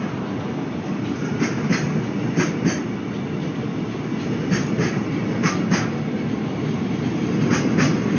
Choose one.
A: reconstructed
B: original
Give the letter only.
B